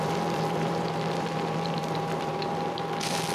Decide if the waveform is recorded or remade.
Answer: remade